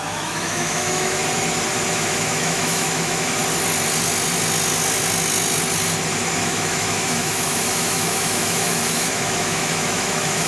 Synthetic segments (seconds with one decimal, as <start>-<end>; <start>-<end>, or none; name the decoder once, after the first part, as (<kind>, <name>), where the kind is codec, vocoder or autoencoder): 0.0-1.2 (autoencoder, DAC-VAE); 1.9-3.4; 6.4-10.5